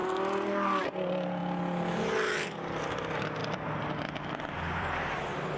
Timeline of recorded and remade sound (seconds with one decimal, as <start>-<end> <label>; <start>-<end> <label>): 0.0-5.6 recorded